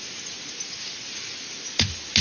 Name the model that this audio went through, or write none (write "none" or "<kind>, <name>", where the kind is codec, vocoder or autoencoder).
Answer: none